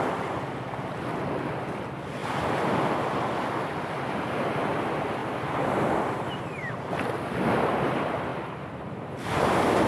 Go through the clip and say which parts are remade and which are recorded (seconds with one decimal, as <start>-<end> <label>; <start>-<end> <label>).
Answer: 0.0-5.2 recorded; 5.2-6.7 remade; 6.7-8.3 recorded; 8.3-9.1 remade; 9.1-9.9 recorded